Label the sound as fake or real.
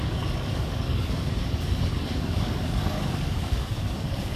fake